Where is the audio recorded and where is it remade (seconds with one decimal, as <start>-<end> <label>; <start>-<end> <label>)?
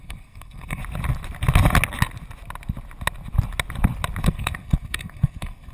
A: 0.0-0.8 remade; 0.8-4.2 recorded; 4.2-5.7 remade